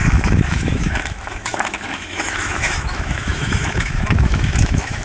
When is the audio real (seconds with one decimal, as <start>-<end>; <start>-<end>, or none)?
none